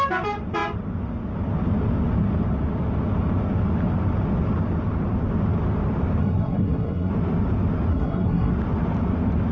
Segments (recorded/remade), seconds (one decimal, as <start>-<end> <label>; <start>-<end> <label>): 0.0-6.2 recorded; 6.2-7.1 remade; 7.1-7.9 recorded; 7.9-8.5 remade; 8.5-9.5 recorded